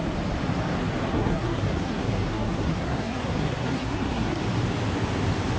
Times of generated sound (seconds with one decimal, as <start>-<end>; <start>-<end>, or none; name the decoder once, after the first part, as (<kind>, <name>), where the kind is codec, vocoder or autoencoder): 1.1-4.4 (codec, SNAC)

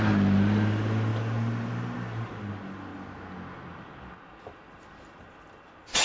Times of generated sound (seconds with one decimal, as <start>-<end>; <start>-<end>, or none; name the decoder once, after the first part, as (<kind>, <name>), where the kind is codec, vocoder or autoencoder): none

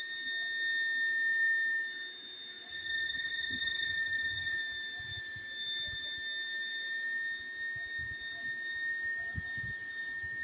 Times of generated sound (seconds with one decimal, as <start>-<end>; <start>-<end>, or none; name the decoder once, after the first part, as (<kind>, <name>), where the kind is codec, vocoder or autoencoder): 2.7-4.6 (vocoder, HiFi-GAN)